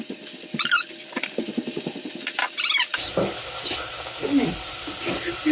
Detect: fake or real real